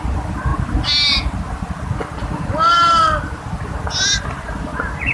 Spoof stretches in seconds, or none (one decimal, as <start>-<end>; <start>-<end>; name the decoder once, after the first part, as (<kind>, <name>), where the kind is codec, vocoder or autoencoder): none